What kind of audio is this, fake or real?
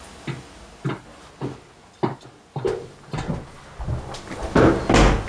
real